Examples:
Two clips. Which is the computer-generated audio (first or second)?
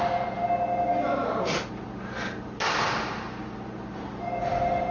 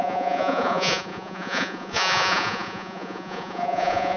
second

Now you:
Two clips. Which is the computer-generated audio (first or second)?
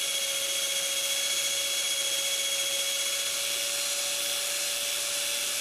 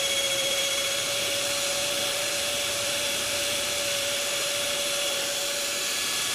second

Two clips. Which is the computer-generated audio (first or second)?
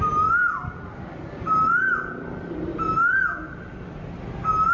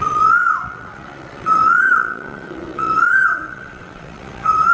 second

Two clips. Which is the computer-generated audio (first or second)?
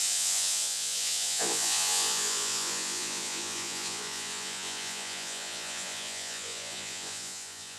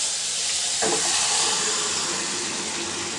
first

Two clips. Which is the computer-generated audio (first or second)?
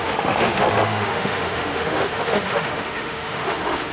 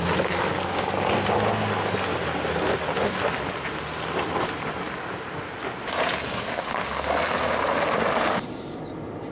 first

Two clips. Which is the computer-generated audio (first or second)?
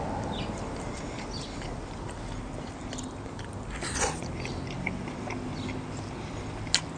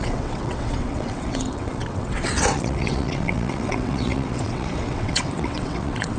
second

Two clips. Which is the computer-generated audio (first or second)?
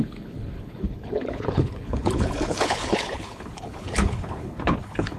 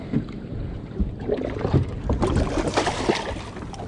first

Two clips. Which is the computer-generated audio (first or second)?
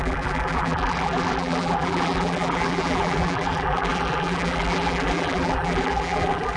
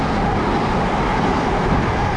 first